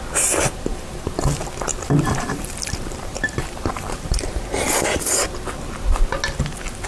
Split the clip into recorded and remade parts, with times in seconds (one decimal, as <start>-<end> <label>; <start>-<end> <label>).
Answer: 0.0-1.7 recorded; 1.7-4.7 remade; 4.7-6.9 recorded